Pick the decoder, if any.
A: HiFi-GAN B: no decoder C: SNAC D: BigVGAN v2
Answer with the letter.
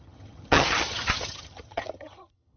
A